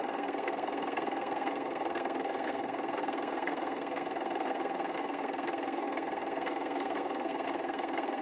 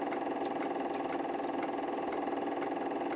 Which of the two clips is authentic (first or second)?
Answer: second